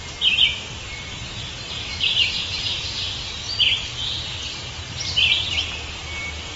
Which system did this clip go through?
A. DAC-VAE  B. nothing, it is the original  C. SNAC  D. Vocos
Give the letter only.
B